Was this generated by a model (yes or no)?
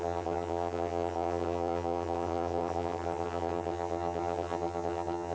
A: yes